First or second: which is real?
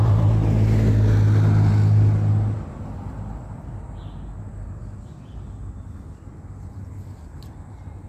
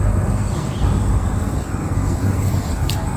first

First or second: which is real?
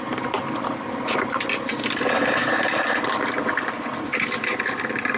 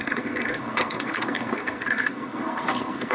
first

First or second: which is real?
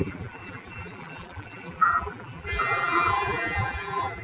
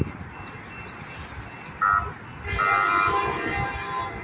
second